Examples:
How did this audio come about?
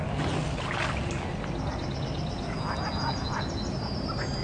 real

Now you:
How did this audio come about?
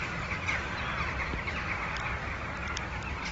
real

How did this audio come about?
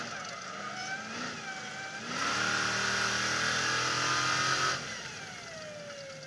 real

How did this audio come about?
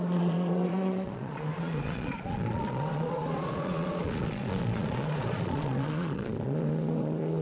fake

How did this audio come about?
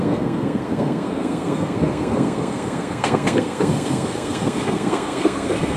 fake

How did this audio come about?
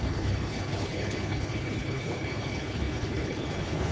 fake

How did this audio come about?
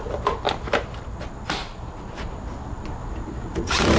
real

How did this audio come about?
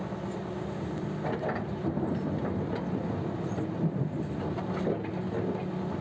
real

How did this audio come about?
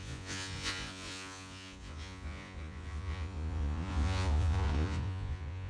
fake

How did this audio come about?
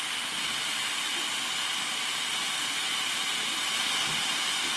real